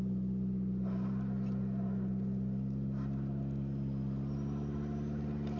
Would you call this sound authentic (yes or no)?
yes